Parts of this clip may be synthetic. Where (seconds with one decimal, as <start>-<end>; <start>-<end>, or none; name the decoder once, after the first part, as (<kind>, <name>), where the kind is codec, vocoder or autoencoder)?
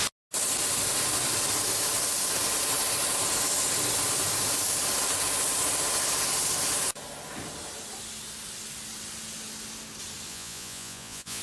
10.3-11.4 (vocoder, Vocos)